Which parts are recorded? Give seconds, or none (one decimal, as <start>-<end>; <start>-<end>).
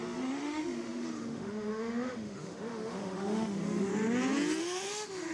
3.9-4.6